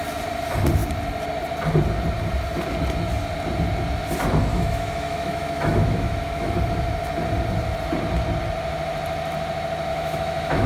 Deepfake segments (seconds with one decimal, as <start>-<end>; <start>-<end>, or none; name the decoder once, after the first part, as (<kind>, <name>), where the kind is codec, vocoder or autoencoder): 4.5-6.6 (autoencoder, DAC-VAE); 9.9-10.7